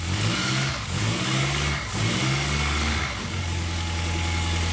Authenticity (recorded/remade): remade